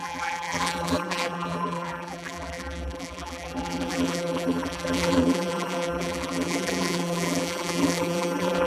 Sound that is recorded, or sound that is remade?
remade